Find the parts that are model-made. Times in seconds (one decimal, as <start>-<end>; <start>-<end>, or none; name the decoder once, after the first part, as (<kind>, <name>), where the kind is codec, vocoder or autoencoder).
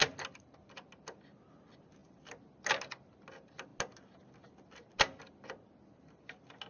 none